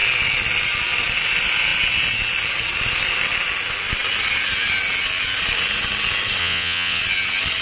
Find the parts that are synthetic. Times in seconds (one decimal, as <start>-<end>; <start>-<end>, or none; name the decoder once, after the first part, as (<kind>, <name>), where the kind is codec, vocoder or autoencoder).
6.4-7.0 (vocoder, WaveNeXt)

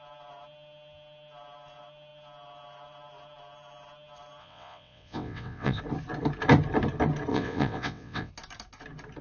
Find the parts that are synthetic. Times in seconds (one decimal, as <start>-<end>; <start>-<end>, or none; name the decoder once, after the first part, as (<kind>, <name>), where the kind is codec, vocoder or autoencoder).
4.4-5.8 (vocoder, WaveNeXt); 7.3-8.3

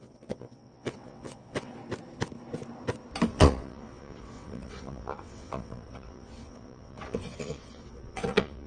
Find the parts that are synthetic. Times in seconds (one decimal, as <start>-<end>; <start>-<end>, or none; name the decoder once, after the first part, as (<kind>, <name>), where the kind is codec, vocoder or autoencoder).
0.0-1.8 (vocoder, WaveNeXt); 3.3-8.7

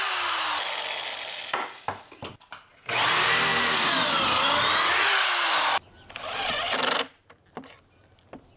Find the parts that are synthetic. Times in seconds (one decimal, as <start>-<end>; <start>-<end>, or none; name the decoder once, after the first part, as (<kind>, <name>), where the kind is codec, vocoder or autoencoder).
none

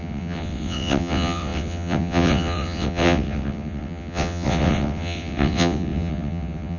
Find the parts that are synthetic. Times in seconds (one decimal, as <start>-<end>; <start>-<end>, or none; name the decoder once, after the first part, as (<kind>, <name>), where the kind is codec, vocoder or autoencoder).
0.0-6.8 (vocoder, WaveNeXt)

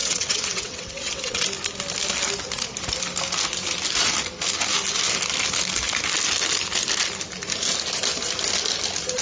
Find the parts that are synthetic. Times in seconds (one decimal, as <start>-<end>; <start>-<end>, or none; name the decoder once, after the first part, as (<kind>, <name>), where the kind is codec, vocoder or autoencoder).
0.0-1.4 (vocoder, WaveNeXt)

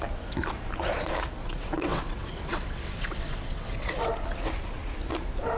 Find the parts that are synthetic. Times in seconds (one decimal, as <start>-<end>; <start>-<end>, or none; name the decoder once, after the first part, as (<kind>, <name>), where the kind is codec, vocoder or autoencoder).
1.4-4.1 (vocoder, WaveNeXt)

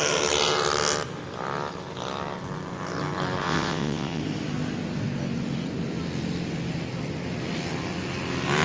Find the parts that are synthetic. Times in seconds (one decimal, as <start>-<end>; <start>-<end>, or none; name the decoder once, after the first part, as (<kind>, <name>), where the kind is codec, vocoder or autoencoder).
3.4-4.2 (vocoder, WaveNeXt)